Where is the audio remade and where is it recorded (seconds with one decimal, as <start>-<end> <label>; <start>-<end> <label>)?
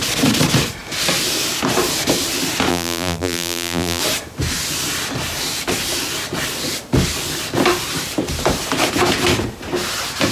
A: 0.0-2.7 recorded; 2.7-4.0 remade; 4.0-10.3 recorded